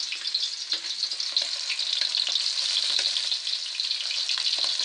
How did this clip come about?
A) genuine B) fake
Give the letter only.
A